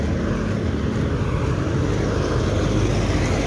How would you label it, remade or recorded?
recorded